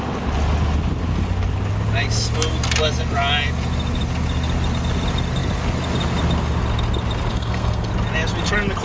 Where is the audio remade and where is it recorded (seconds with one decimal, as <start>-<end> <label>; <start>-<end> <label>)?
0.0-7.3 recorded; 7.3-7.9 remade; 7.9-8.8 recorded